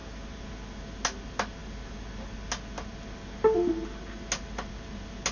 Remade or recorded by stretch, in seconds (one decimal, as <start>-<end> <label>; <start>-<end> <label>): 0.0-5.3 recorded